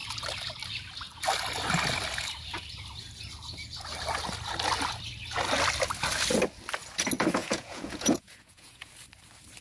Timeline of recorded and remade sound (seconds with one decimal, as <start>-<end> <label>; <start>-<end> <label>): 0.0-7.4 recorded; 7.4-8.9 remade; 8.9-9.6 recorded

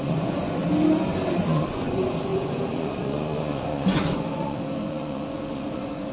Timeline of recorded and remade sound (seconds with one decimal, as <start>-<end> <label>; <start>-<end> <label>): 0.0-0.6 remade; 0.6-1.4 recorded; 1.4-6.1 remade

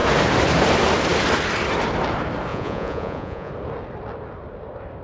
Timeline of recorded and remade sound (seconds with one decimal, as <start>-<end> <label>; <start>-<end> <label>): 0.0-2.5 recorded; 2.5-3.5 remade; 3.5-5.0 recorded